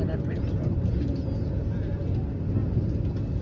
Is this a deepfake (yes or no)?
no